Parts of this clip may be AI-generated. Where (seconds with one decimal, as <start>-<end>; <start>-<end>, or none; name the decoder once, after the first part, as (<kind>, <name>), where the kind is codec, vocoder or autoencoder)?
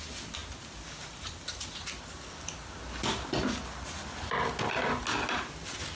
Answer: none